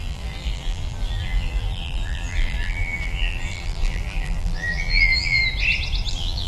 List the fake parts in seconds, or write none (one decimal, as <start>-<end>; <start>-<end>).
0.0-5.4; 6.1-6.5